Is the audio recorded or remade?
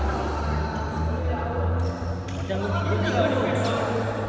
recorded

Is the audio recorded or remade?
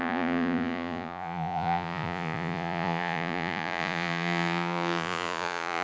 remade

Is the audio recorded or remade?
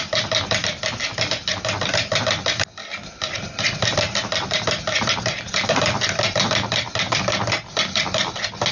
recorded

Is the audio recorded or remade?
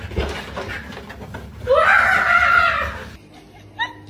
recorded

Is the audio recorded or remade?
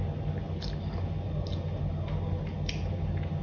recorded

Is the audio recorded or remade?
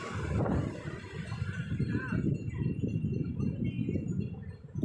remade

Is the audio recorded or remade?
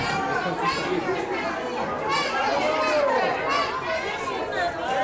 recorded